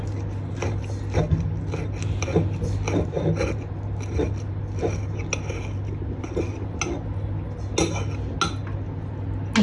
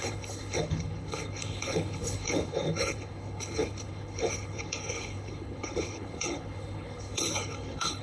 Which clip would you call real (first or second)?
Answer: first